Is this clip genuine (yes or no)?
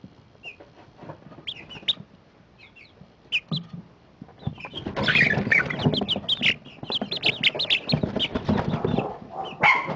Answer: yes